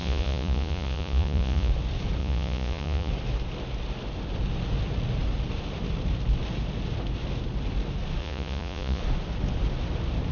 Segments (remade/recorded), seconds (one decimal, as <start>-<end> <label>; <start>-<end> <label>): 0.0-1.7 remade; 1.7-2.2 recorded; 2.2-3.1 remade; 3.1-8.2 recorded; 8.2-9.0 remade; 9.0-10.3 recorded